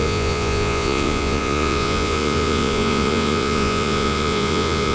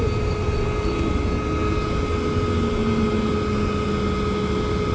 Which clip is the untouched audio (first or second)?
second